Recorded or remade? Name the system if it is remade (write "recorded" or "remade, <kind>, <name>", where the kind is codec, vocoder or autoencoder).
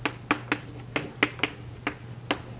recorded